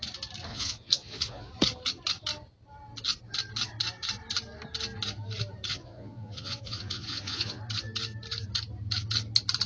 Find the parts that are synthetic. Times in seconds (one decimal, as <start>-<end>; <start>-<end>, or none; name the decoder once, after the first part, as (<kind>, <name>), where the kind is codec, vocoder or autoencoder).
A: 0.5-1.5 (vocoder, Vocos); 5.7-7.6